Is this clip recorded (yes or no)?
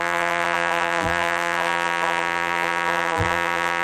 no